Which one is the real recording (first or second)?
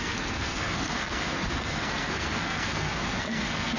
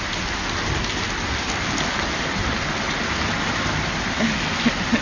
second